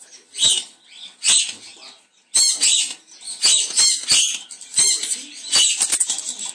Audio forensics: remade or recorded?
recorded